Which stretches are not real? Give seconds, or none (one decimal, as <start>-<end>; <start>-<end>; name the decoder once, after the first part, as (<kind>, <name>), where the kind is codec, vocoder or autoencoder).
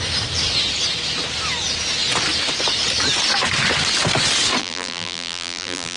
4.6-6.0 (vocoder, BigVGAN v2)